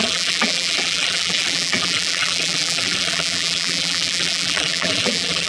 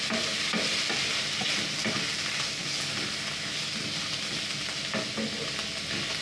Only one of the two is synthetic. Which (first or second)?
first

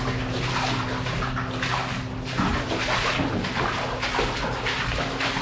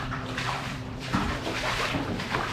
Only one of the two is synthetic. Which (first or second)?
second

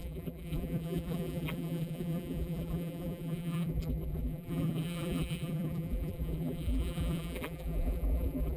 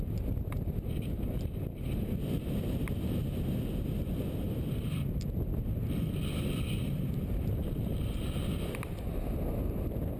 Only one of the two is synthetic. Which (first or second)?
first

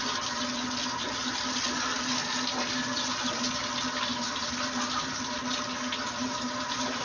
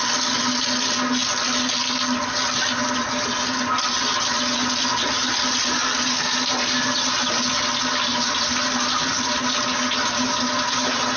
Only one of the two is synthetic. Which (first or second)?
first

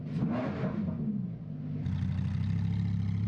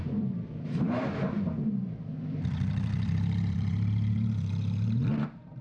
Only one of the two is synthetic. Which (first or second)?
second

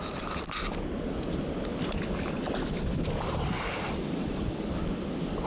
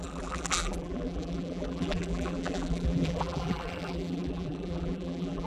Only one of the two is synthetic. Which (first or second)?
second